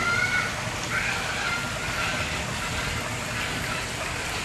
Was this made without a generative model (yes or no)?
yes